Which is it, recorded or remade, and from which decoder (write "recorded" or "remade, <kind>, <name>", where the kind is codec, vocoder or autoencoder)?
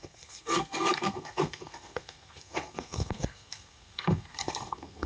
remade, codec, SNAC